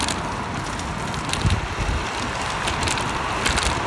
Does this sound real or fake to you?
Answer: real